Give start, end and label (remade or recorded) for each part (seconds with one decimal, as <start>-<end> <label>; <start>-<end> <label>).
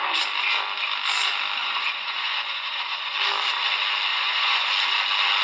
0.0-1.6 recorded; 1.6-3.1 remade; 3.1-4.1 recorded; 4.1-4.7 remade; 4.7-5.4 recorded